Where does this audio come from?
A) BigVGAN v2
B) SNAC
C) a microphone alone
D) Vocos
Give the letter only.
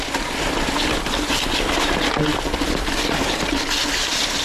C